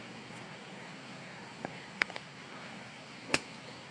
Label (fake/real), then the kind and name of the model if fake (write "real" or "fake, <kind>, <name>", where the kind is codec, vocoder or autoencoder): fake, codec, SNAC